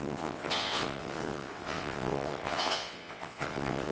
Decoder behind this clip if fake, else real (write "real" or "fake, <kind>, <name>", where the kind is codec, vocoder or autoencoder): fake, vocoder, WaveNeXt